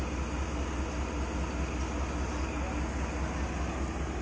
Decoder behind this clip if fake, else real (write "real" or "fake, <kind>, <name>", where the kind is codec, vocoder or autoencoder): real